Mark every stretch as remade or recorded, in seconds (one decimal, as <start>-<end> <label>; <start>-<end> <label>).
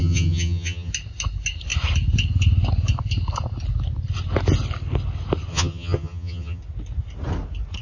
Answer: 0.0-0.9 remade; 0.9-5.5 recorded; 5.5-6.6 remade; 6.6-7.8 recorded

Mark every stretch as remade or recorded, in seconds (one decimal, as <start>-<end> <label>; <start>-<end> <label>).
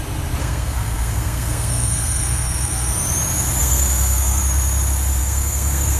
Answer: 0.0-0.4 recorded; 0.4-2.9 remade; 2.9-3.6 recorded; 3.6-4.4 remade; 4.4-5.2 recorded; 5.2-6.0 remade